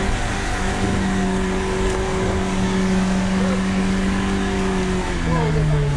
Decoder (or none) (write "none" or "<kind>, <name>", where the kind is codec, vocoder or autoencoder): codec, DAC